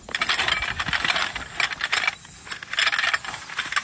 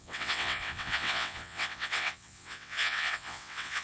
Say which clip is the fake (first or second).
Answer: second